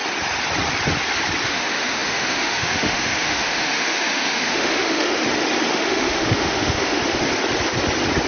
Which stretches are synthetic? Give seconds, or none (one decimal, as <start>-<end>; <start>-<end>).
1.5-5.2; 5.7-7.0